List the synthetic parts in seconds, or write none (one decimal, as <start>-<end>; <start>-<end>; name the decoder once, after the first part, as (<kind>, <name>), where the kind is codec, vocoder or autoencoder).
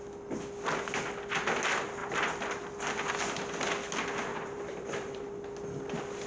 4.3-5.2 (vocoder, BigVGAN v2)